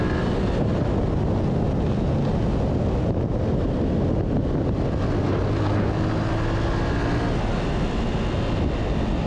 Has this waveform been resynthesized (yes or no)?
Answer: no